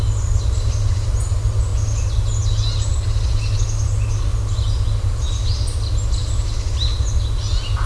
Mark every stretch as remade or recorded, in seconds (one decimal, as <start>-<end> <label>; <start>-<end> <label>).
0.0-7.9 recorded